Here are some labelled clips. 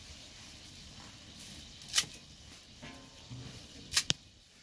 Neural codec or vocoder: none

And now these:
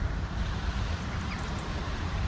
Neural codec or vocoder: vocoder, BigVGAN v2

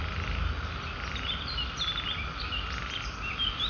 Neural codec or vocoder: none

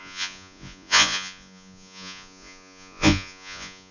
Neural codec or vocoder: vocoder, Vocos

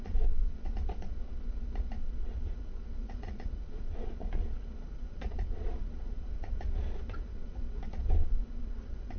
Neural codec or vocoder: vocoder, Vocos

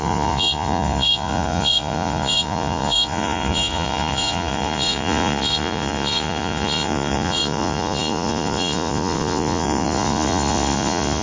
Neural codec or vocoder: vocoder, Vocos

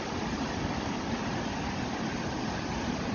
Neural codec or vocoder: none